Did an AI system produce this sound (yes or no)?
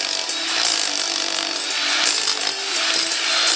no